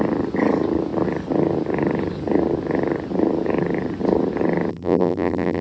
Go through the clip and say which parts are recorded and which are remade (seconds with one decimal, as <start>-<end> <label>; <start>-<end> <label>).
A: 0.0-4.7 recorded; 4.7-5.6 remade